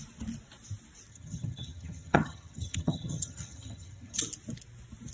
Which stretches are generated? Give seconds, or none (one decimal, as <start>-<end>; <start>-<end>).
1.1-4.2